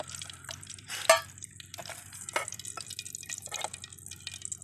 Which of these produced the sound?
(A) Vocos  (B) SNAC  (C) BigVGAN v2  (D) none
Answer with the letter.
D